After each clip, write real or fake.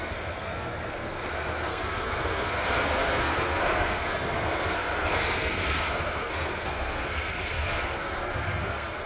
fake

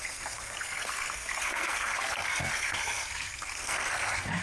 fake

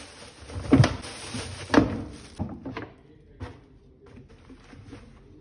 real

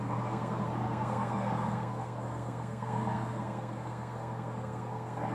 fake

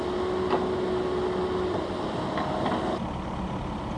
real